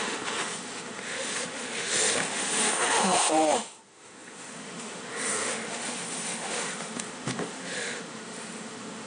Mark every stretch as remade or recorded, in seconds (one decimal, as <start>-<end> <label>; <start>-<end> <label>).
0.0-9.1 remade